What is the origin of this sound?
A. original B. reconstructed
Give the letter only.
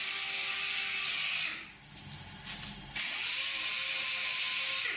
A